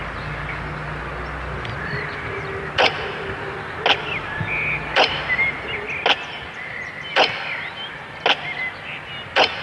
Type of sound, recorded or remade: recorded